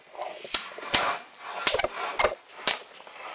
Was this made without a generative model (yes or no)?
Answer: yes